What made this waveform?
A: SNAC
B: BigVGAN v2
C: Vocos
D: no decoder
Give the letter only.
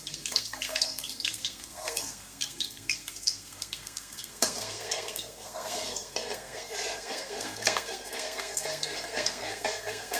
A